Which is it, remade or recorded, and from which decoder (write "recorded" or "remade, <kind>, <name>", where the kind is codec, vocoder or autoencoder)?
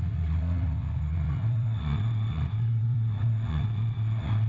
remade, vocoder, WaveNeXt